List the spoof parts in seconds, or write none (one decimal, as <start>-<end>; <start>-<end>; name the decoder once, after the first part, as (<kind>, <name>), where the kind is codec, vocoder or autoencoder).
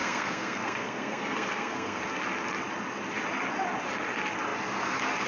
0.0-2.0 (codec, SNAC)